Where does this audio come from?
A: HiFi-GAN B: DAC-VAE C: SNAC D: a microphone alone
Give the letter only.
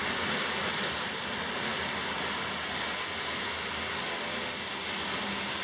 D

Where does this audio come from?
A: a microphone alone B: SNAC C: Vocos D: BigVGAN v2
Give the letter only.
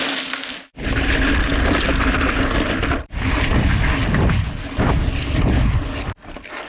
A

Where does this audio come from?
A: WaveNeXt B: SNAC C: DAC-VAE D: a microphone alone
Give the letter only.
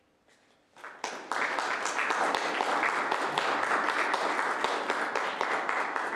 D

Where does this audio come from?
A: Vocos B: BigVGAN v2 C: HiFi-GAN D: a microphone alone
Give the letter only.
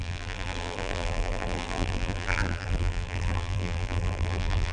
B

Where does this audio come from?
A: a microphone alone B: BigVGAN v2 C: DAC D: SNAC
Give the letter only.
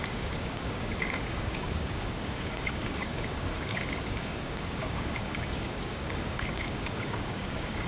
C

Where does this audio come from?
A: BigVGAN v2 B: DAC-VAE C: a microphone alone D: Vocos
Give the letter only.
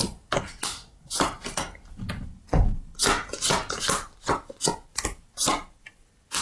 C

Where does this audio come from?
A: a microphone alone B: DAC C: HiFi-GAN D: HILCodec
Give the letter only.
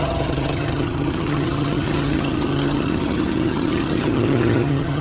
C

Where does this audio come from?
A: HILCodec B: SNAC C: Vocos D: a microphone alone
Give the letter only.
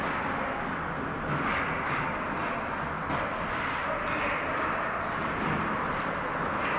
D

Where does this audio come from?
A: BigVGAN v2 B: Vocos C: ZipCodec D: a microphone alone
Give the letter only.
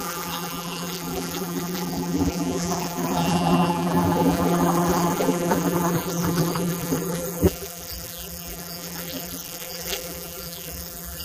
A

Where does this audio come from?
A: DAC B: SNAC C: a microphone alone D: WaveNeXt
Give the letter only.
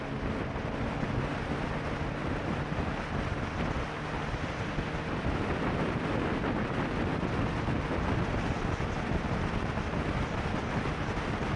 C